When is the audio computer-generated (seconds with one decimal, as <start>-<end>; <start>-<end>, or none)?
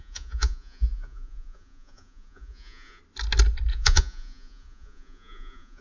0.0-3.0; 3.7-5.8